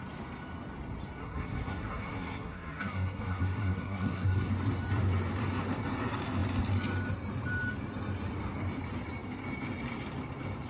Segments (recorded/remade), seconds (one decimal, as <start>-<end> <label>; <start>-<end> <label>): 0.0-1.2 recorded; 1.2-4.5 remade; 4.5-10.7 recorded